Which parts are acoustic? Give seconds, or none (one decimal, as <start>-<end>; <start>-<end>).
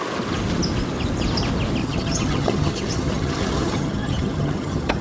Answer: 0.0-1.8